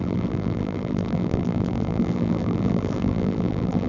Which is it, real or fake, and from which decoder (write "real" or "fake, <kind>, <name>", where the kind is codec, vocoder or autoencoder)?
fake, vocoder, BigVGAN v2